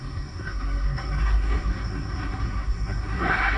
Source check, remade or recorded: remade